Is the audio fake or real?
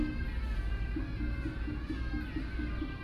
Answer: real